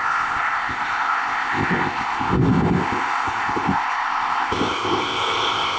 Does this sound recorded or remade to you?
remade